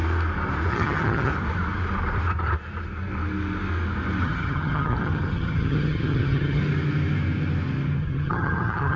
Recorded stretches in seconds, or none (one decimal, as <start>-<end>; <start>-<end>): 0.0-0.7; 1.3-4.2; 6.6-8.0